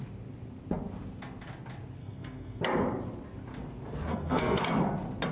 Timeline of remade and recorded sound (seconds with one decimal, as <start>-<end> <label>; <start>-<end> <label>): 0.0-2.0 recorded; 2.0-2.6 remade; 2.6-4.1 recorded; 4.1-4.6 remade; 4.6-5.3 recorded